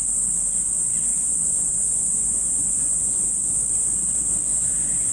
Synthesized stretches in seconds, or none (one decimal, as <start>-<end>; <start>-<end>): 1.1-3.3; 4.5-5.1

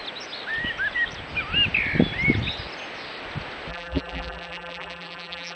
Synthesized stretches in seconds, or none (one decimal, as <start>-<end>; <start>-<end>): 3.7-5.6

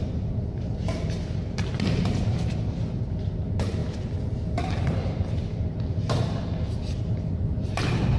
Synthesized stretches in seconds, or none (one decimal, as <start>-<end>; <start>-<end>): 0.0-3.8; 4.9-8.2

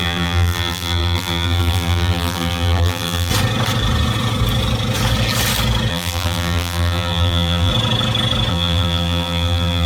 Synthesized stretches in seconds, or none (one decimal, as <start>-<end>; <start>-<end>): 0.0-3.3; 5.9-7.7; 8.5-9.9